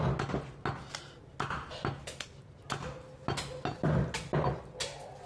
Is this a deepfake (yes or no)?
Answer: no